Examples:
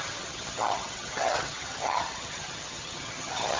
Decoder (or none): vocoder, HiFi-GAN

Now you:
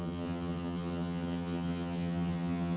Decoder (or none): vocoder, HiFi-GAN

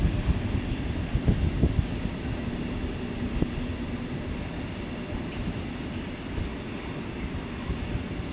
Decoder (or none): none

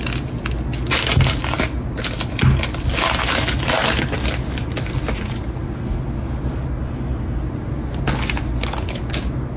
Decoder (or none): none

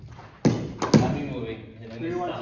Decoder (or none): none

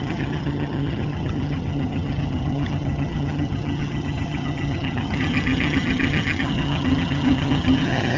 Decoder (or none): vocoder, HiFi-GAN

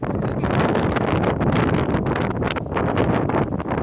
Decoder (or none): none